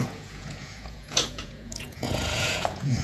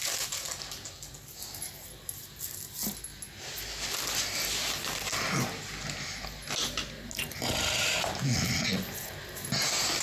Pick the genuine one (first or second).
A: second